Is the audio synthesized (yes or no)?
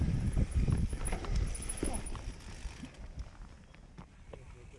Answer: no